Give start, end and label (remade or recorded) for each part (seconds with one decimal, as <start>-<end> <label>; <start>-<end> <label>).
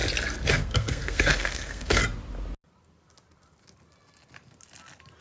0.0-0.5 recorded; 0.5-2.0 remade; 2.0-5.2 recorded